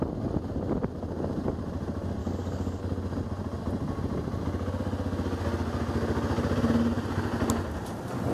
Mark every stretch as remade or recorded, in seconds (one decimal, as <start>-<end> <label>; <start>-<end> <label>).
0.0-2.2 recorded; 2.2-2.8 remade; 2.8-8.3 recorded